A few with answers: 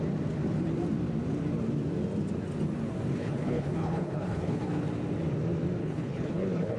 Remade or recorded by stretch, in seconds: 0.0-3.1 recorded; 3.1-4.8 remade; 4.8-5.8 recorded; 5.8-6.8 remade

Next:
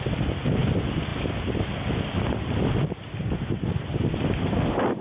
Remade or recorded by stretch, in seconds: 0.0-5.0 recorded

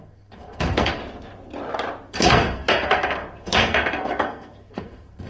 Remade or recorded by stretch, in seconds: 0.0-1.0 remade; 1.0-2.1 recorded; 2.1-5.3 remade

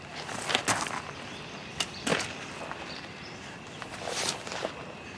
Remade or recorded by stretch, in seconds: 0.0-5.2 recorded

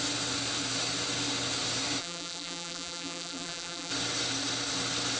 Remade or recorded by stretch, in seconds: 0.0-2.0 recorded; 2.0-3.9 remade; 3.9-5.2 recorded

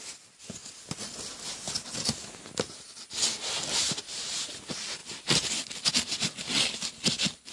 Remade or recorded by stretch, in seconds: 0.0-7.5 recorded

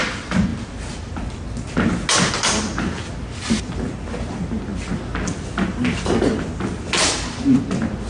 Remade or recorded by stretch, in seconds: 0.0-8.1 recorded